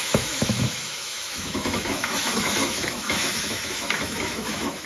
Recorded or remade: remade